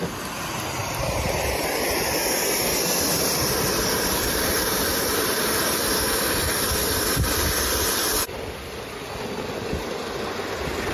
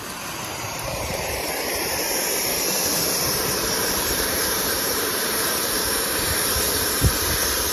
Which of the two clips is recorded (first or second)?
first